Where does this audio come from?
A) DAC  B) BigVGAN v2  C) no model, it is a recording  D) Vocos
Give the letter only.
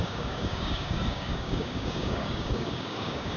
A